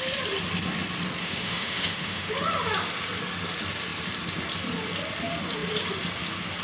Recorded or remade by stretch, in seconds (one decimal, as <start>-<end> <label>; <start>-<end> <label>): 0.0-1.2 recorded; 1.2-2.3 remade; 2.3-6.6 recorded